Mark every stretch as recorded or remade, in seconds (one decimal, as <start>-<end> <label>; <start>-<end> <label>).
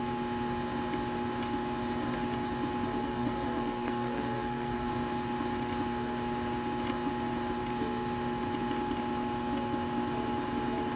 0.0-3.0 recorded; 3.0-4.9 remade; 4.9-11.0 recorded